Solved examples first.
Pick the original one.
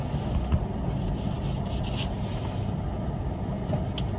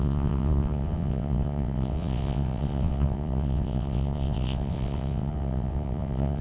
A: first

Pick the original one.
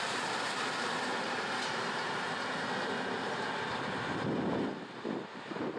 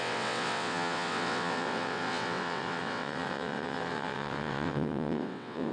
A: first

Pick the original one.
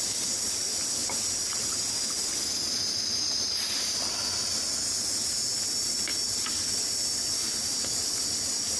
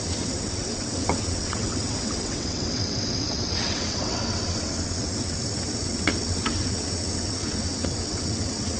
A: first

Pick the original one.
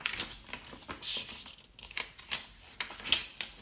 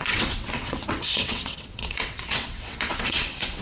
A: first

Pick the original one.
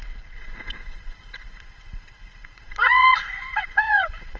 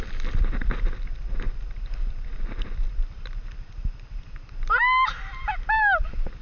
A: second